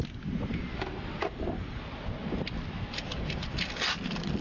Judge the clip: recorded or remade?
recorded